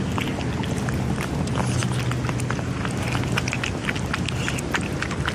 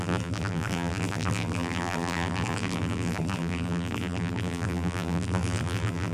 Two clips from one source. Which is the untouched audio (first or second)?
first